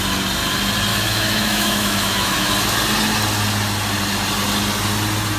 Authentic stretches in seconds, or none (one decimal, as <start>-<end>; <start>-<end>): 0.0-0.9; 2.5-5.4